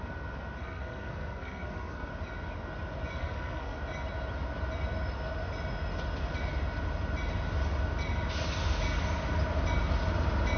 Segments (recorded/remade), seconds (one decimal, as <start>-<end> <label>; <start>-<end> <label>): 0.0-0.6 recorded; 0.6-2.1 remade; 2.1-3.2 recorded; 3.2-3.8 remade; 3.8-10.6 recorded